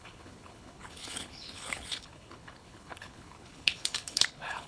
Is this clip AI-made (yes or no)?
yes